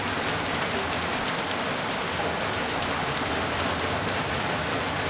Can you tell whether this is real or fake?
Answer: real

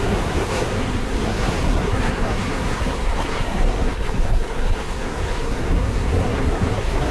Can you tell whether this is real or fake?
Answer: fake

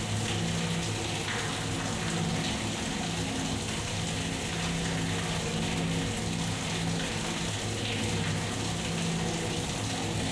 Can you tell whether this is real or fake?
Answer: real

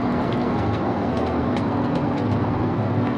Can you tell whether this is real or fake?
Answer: fake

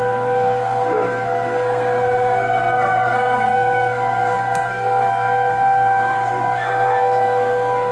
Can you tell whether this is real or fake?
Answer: fake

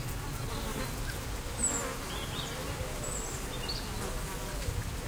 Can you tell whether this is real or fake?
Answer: real